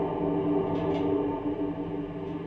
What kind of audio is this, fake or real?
real